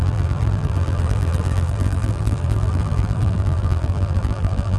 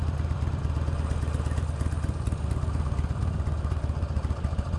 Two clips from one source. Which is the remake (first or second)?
first